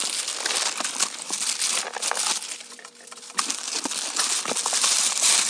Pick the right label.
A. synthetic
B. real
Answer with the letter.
B